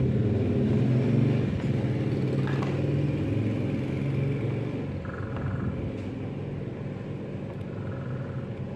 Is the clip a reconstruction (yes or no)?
no